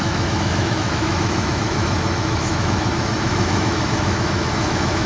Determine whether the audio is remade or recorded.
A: remade